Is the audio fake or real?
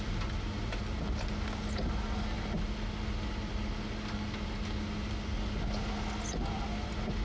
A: real